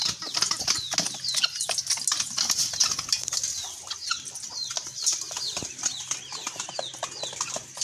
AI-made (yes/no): no